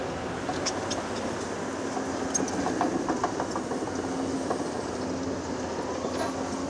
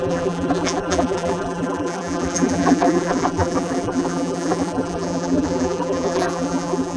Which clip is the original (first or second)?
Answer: first